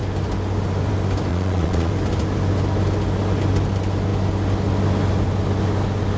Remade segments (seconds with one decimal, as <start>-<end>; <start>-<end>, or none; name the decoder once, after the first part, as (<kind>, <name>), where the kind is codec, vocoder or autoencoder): 1.3-1.9 (vocoder, Vocos)